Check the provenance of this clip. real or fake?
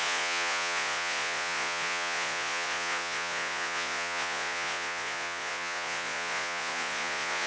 fake